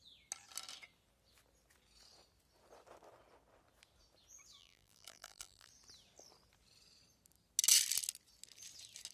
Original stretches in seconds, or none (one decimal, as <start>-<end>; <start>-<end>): 0.0-4.6; 5.7-9.1